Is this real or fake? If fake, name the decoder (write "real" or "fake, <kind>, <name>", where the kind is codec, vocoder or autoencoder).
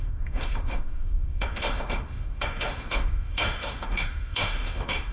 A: fake, autoencoder, DAC-VAE